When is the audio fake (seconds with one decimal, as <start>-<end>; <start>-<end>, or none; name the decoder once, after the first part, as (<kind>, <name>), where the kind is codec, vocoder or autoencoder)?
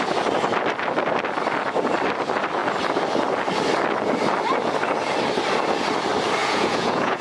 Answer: 6.4-7.2 (vocoder, Vocos)